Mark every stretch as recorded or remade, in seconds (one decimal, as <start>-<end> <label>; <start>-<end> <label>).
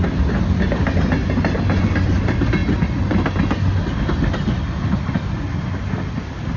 0.0-6.6 recorded